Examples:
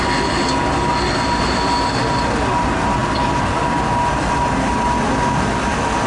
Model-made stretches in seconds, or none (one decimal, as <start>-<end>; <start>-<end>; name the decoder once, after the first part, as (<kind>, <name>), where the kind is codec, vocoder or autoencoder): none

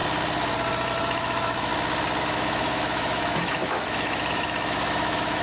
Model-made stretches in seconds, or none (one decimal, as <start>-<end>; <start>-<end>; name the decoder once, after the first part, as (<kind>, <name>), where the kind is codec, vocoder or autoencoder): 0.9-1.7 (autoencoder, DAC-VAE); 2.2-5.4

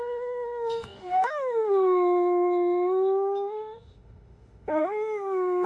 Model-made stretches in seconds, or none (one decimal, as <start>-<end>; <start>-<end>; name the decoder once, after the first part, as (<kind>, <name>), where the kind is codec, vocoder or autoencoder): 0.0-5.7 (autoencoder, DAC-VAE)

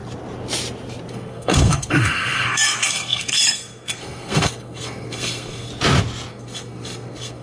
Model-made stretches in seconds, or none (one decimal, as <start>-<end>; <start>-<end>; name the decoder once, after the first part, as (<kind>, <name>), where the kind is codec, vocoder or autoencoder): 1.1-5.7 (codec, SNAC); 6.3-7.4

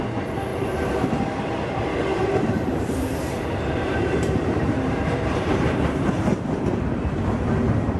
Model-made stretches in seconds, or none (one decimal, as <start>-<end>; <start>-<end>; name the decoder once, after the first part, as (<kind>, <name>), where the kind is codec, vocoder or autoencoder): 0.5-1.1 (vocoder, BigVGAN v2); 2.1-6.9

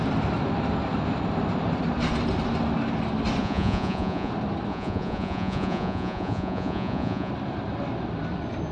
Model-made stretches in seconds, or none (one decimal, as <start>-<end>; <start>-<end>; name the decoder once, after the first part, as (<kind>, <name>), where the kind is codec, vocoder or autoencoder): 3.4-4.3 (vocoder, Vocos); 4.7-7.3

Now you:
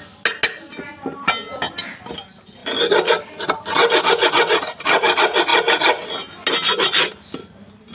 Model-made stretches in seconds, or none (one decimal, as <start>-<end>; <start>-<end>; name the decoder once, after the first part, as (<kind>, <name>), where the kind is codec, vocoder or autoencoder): none